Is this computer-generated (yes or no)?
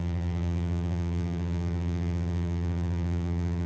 yes